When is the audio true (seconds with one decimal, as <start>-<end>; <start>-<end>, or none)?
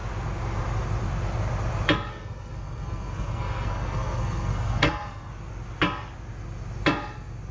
0.0-2.1; 5.3-7.5